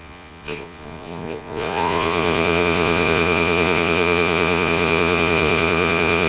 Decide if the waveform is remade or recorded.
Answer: remade